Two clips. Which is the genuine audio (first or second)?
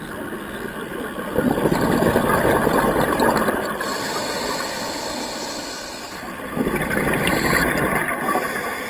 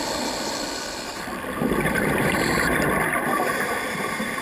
first